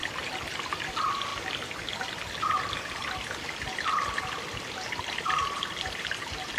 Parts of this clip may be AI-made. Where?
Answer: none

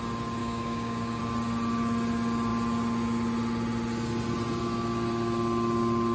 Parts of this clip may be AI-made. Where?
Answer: 0.4-1.2 (codec, DAC)

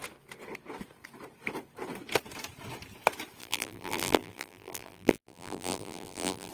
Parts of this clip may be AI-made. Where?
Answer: 3.4-6.5 (vocoder, BigVGAN v2)

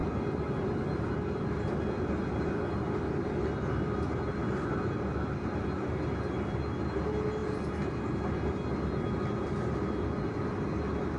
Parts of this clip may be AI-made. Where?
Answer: none